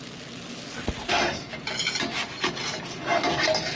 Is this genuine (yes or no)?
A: yes